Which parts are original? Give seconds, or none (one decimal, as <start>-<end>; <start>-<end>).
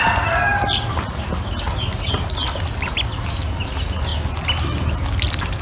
0.0-5.6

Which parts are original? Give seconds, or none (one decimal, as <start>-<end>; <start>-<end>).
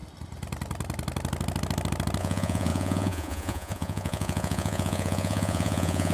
0.0-2.2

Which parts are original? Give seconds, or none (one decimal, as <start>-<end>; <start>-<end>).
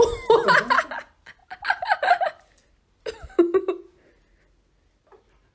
0.0-5.5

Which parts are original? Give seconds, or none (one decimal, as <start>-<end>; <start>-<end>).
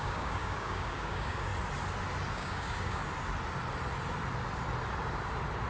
1.5-2.3; 3.0-5.7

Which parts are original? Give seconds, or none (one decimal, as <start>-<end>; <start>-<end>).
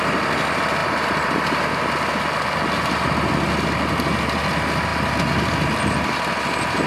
0.0-6.9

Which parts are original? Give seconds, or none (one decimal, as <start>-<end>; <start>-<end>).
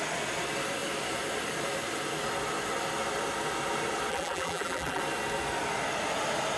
0.0-4.1; 5.0-6.6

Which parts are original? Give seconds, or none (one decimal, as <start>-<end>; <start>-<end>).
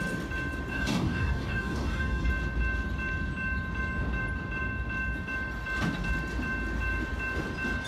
0.0-0.7; 2.3-7.9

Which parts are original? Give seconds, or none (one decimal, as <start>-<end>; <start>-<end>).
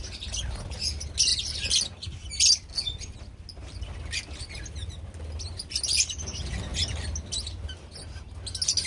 0.0-8.9